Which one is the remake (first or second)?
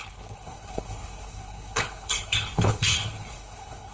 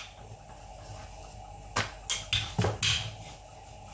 first